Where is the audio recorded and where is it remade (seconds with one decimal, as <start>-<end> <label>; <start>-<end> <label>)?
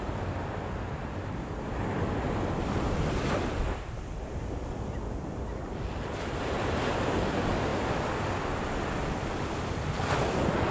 0.0-10.7 recorded